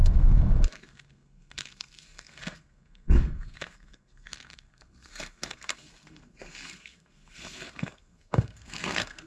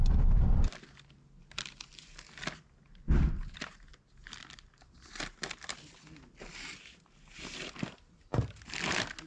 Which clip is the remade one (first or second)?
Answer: first